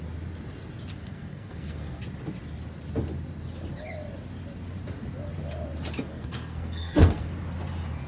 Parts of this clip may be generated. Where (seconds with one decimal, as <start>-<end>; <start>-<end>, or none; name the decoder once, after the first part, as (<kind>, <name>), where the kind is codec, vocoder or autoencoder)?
1.0-2.0 (codec, SNAC); 6.1-7.3